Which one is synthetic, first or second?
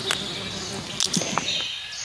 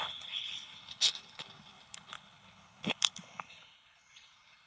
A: second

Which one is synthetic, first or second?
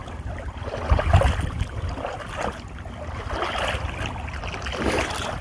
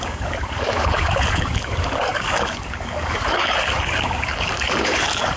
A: second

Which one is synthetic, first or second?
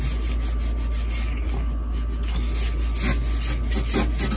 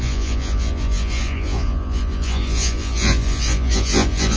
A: second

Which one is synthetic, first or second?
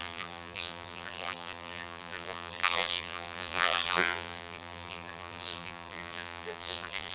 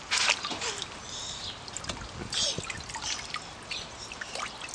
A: first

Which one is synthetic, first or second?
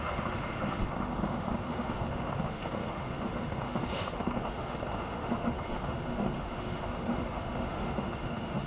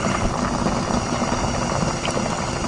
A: first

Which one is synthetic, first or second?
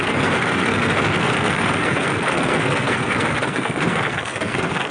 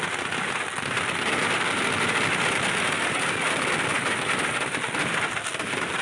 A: first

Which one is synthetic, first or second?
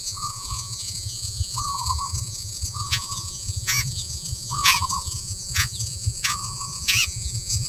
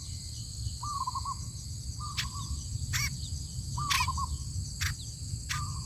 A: first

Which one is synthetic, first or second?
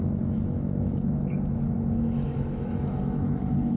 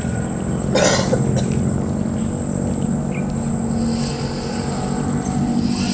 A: first